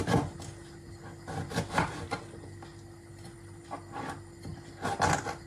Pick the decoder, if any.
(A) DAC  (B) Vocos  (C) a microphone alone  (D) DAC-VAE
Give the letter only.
C